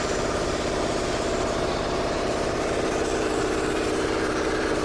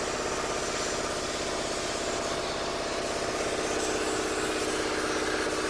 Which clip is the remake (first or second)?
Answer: first